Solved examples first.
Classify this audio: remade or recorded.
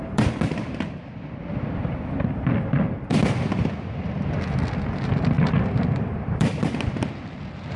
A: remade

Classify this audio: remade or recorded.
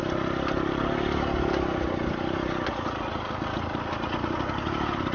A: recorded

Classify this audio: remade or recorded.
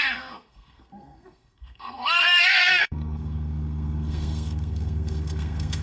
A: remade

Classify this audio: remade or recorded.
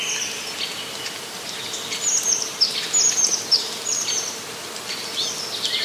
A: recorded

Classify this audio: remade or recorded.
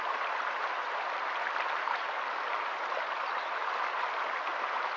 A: recorded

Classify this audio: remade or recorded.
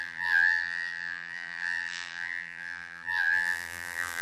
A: remade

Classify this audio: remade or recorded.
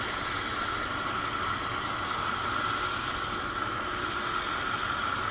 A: recorded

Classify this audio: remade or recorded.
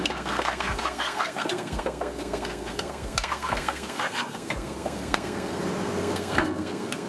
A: remade